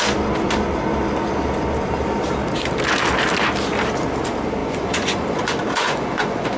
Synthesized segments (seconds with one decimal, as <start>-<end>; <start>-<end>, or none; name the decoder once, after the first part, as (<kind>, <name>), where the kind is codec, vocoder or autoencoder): 4.6-6.6 (vocoder, Vocos)